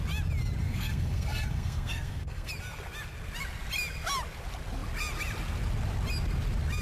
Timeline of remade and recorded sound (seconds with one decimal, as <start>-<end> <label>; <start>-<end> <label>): 0.0-0.6 recorded; 0.6-2.5 remade; 2.5-6.8 recorded